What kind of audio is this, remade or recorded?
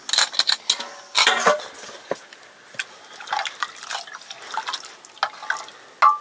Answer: recorded